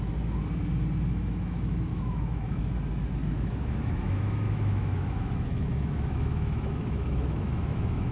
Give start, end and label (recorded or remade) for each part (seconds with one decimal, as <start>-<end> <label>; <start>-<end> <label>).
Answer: 0.0-1.1 recorded; 1.1-2.6 remade; 2.6-3.2 recorded; 3.2-8.1 remade